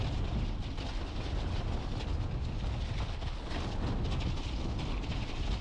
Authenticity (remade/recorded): recorded